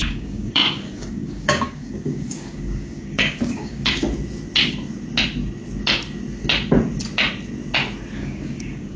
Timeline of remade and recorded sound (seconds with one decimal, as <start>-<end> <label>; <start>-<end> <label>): 0.0-4.0 remade; 4.0-8.2 recorded; 8.2-9.0 remade